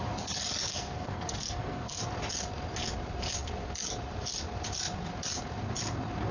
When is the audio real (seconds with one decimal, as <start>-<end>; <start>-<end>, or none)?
0.0-0.7; 2.0-6.3